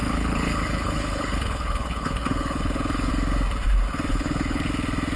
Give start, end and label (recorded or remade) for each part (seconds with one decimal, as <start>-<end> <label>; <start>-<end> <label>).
0.0-3.1 remade; 3.1-4.1 recorded; 4.1-4.7 remade; 4.7-5.2 recorded